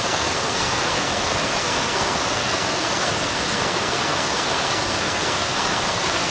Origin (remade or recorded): remade